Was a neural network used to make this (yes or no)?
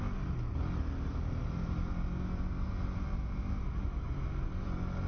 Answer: no